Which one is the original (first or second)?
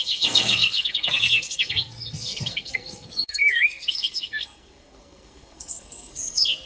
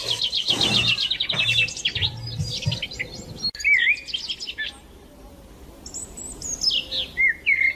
second